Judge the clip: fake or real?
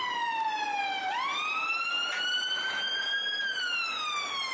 real